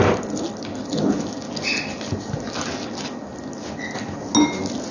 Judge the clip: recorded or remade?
recorded